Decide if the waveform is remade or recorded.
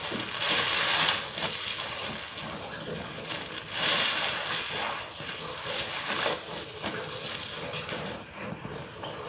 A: recorded